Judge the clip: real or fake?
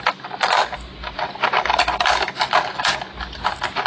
real